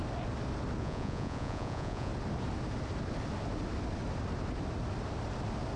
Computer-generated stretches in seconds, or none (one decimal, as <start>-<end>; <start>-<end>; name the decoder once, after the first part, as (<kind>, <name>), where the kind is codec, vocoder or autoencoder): 0.8-2.1 (vocoder, Vocos)